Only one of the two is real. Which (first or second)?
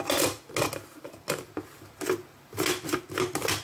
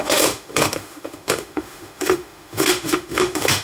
first